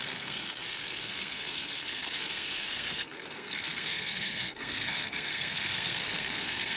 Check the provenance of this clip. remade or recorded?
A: remade